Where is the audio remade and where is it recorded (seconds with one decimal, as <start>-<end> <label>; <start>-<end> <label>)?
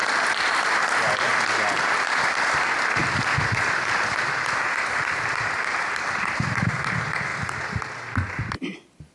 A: 0.0-0.8 remade; 0.8-3.0 recorded; 3.0-6.8 remade; 6.8-7.3 recorded; 7.3-9.1 remade